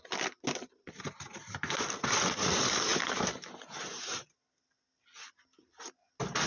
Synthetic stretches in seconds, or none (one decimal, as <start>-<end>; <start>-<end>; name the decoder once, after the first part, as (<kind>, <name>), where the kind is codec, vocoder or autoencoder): none